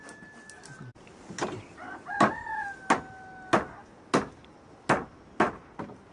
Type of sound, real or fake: real